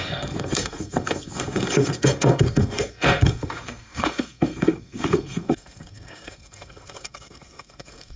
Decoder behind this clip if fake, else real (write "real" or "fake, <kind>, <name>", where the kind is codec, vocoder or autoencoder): fake, codec, SNAC